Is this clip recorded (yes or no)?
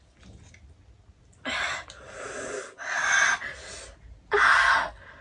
yes